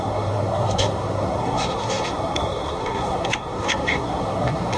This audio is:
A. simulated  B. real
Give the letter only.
A